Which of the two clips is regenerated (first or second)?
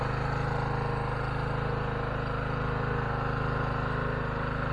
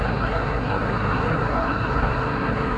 second